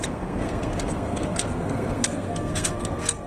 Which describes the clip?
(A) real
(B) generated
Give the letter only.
B